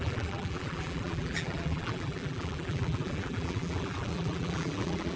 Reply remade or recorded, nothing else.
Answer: remade